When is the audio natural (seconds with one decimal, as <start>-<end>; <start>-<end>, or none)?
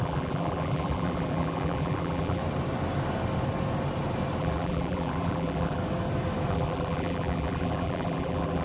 2.4-4.4; 5.8-6.5